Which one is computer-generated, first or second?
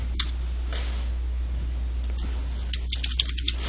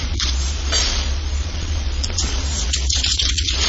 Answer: second